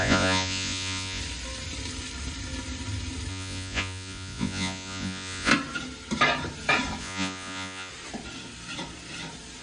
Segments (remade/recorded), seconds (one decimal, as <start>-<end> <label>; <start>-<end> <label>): 0.0-1.2 remade; 1.2-3.3 recorded; 3.3-5.5 remade; 5.5-7.0 recorded; 7.0-7.9 remade; 7.9-9.6 recorded